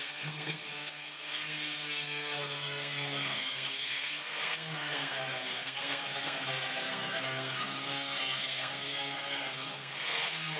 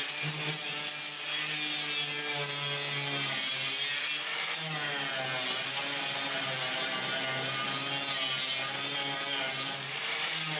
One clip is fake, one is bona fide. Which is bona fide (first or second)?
second